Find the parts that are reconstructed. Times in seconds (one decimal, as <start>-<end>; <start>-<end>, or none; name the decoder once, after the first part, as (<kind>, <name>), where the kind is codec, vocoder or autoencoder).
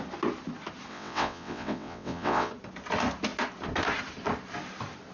0.9-2.5 (vocoder, WaveNeXt)